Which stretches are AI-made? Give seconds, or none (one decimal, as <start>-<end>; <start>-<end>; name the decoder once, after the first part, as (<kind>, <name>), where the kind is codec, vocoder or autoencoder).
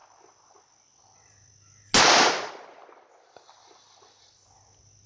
none